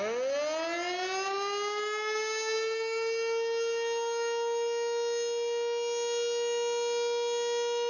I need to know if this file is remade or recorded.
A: recorded